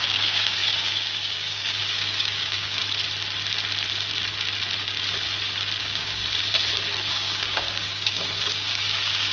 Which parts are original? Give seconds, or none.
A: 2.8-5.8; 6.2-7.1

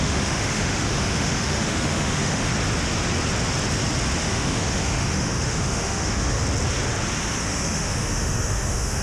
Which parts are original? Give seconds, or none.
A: 2.5-4.2; 6.4-7.4

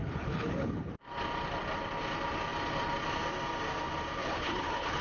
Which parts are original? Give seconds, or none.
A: 0.9-4.2

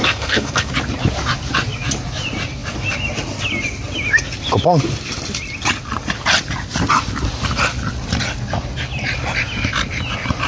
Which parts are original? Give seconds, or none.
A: 0.7-10.5

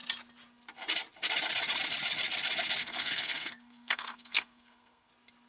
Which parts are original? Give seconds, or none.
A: 0.0-2.8; 5.1-5.5

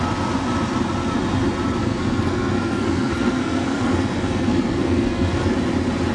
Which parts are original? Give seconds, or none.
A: 0.0-1.8; 5.5-6.1

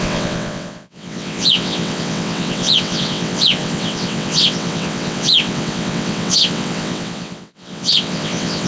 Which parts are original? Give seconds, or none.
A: none

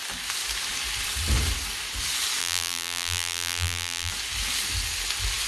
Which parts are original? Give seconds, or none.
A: 0.0-2.4; 4.1-5.5